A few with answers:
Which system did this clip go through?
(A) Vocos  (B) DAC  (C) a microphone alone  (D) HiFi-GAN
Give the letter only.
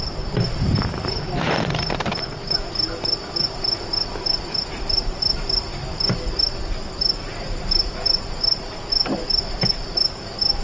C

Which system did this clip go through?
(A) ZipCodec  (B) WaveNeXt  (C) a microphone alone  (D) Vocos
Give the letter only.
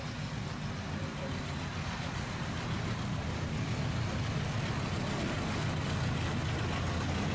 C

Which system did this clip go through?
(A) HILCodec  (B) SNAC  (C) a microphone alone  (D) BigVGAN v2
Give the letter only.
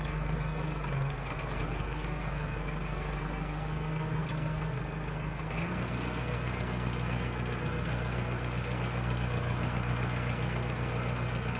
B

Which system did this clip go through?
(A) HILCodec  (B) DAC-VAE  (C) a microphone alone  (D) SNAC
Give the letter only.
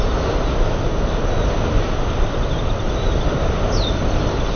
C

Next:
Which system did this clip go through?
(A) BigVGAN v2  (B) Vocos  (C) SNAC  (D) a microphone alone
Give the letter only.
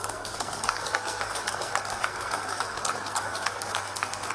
C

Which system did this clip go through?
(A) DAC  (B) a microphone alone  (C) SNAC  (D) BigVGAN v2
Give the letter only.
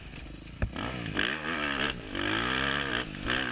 B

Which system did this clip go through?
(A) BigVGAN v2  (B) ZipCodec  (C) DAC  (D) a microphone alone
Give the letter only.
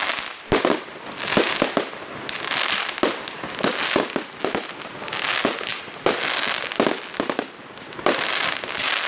D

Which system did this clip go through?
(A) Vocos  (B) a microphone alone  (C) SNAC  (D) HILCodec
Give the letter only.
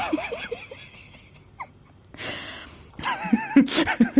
B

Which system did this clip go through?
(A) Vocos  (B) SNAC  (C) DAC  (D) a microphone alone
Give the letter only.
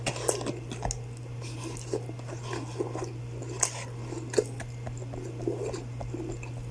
D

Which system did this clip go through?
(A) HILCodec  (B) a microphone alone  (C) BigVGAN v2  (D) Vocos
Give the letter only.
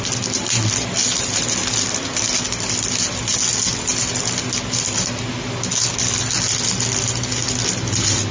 B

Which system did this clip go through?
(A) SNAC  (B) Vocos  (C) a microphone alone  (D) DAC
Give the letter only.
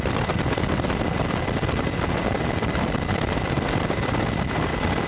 C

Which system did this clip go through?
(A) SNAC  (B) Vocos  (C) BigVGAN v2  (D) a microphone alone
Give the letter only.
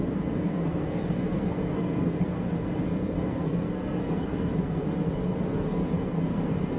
A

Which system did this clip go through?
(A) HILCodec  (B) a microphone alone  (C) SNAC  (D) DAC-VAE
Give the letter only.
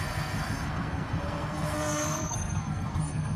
C